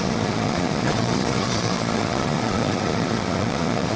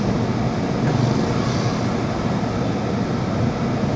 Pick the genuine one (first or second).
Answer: second